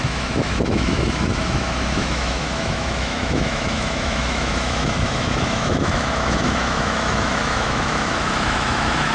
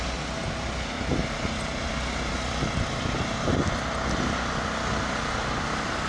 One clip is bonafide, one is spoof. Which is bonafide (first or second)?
second